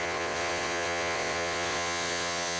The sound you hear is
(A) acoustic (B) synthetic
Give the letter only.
B